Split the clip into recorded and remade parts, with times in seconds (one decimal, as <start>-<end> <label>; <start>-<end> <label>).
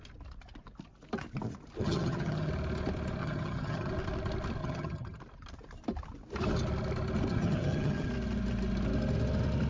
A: 0.0-1.8 recorded; 1.8-2.5 remade; 2.5-3.2 recorded; 3.2-3.9 remade; 3.9-4.6 recorded; 4.6-5.2 remade; 5.2-7.3 recorded; 7.3-8.1 remade; 8.1-9.7 recorded